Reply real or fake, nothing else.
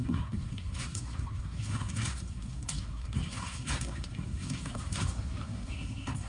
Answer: fake